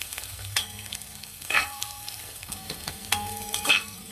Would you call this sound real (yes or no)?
no